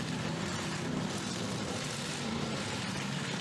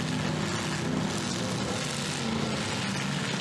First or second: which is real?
second